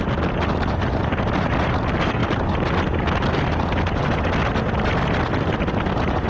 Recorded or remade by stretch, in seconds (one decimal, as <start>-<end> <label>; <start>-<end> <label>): 0.0-6.3 recorded